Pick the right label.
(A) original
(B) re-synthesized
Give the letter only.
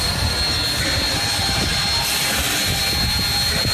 A